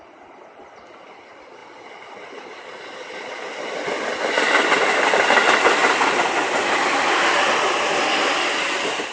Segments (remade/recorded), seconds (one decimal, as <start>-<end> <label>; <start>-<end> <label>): 0.0-9.1 recorded

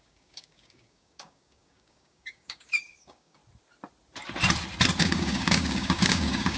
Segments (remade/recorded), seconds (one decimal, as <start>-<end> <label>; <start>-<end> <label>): 0.0-3.4 remade; 3.4-5.0 recorded; 5.0-6.6 remade

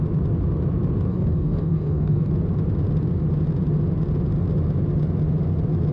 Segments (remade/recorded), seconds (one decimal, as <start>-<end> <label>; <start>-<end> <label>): 0.0-1.1 recorded; 1.1-2.3 remade; 2.3-5.9 recorded

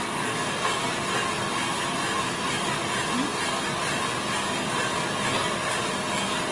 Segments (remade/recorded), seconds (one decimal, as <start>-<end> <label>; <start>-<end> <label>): 0.0-6.5 recorded